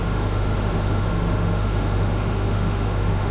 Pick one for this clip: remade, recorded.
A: remade